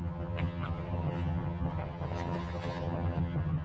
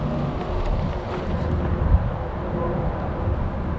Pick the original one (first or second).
second